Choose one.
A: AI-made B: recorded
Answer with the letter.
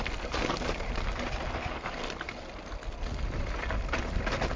B